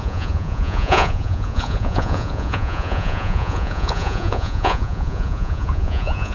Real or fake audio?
fake